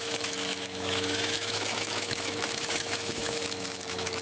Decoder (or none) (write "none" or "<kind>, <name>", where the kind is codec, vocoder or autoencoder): autoencoder, DAC-VAE